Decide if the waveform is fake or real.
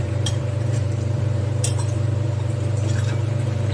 fake